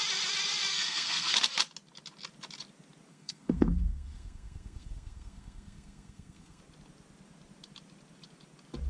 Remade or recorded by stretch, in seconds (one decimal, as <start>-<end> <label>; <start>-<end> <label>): 0.0-0.7 recorded; 0.7-1.3 remade; 1.3-3.1 recorded; 3.1-6.6 remade; 6.6-8.9 recorded